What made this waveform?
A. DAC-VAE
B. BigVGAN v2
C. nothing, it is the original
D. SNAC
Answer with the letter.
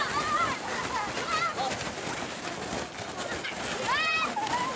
C